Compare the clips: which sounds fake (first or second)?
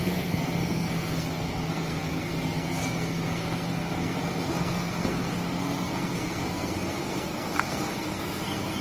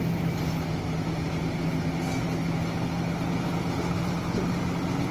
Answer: first